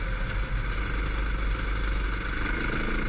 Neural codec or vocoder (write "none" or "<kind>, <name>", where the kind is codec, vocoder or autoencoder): none